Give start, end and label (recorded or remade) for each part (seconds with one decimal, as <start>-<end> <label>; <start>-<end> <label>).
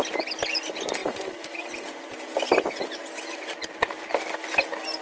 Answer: 0.0-1.0 recorded; 1.0-2.5 remade; 2.5-3.0 recorded; 3.0-4.0 remade; 4.0-5.0 recorded